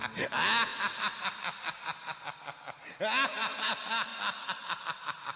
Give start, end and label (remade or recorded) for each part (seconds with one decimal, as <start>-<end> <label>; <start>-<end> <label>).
0.0-0.7 recorded; 0.7-2.2 remade; 2.2-5.4 recorded